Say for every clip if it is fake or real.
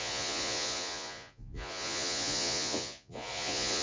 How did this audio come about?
fake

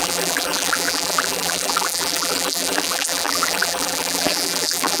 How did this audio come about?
fake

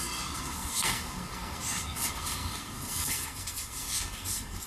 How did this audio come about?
fake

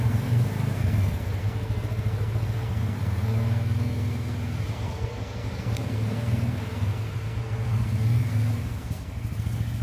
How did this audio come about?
fake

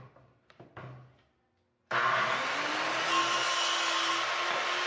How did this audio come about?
real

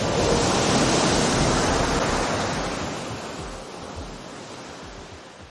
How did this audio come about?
real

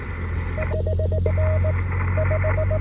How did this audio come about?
real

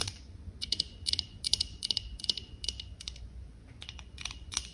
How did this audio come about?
fake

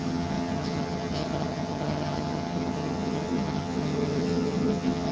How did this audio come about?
fake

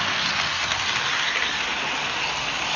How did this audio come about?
real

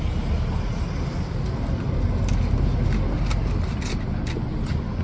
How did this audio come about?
real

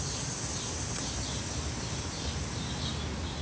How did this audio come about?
real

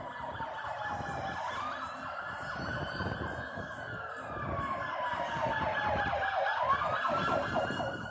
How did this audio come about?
real